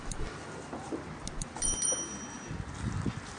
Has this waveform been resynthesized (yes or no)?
no